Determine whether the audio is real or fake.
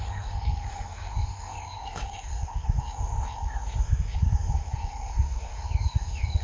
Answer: fake